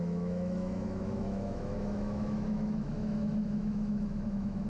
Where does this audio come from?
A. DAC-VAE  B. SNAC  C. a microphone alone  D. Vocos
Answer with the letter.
A